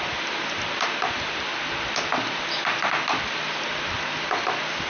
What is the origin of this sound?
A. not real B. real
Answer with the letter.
B